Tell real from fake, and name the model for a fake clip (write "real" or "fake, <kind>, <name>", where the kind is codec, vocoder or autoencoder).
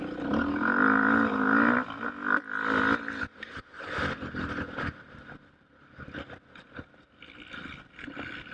real